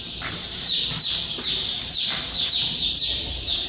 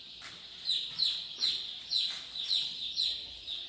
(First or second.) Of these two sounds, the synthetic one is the first